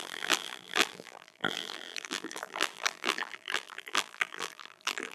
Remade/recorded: remade